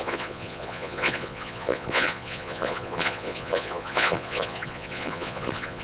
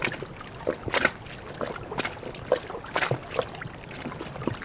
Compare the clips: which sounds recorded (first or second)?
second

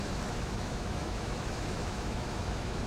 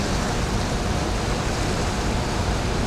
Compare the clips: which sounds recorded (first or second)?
second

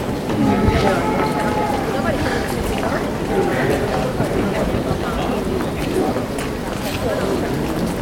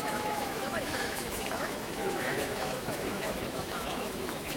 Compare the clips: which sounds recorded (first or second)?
first